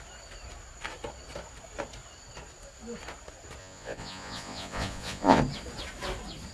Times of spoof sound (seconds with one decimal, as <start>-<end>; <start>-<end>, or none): 3.6-5.4